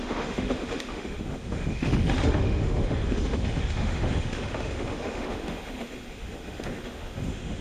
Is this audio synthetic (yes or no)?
yes